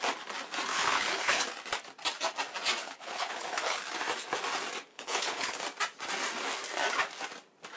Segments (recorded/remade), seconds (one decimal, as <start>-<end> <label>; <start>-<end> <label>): 0.0-0.7 recorded; 0.7-1.4 remade; 1.4-2.8 recorded; 2.8-3.8 remade; 3.8-4.9 recorded; 4.9-5.6 remade; 5.6-7.8 recorded

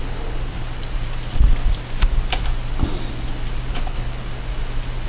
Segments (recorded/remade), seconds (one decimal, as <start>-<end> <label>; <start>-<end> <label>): 0.0-0.6 remade; 0.6-3.7 recorded; 3.7-4.2 remade; 4.2-5.1 recorded

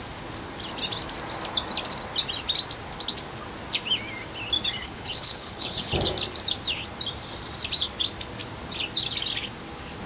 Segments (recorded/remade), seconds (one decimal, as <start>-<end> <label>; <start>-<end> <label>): 0.0-4.8 recorded; 4.8-5.9 remade; 5.9-10.1 recorded

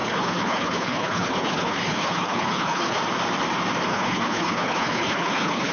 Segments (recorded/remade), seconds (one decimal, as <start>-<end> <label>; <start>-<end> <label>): 0.0-3.0 remade; 3.0-3.9 recorded; 3.9-5.7 remade

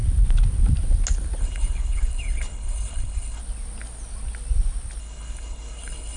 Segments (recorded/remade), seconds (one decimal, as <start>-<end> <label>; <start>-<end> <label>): 0.0-1.4 recorded; 1.4-3.4 remade; 3.4-5.0 recorded; 5.0-6.2 remade

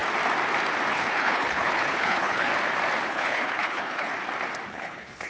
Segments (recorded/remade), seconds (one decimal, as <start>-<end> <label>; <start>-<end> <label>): 0.0-0.9 recorded; 0.9-2.5 remade; 2.5-3.1 recorded; 3.1-4.1 remade; 4.1-4.7 recorded; 4.7-5.3 remade

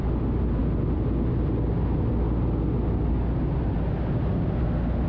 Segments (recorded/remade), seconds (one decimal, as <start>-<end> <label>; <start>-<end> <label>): 0.0-5.1 recorded

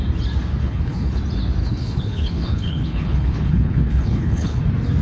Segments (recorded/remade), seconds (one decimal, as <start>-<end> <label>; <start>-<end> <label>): 0.0-0.6 recorded; 0.6-1.2 remade; 1.2-1.6 recorded; 1.6-4.6 remade; 4.6-5.0 recorded